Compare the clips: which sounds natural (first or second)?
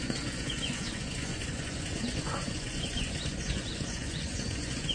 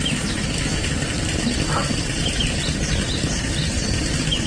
second